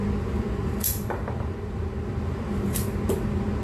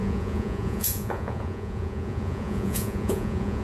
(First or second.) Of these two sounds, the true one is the first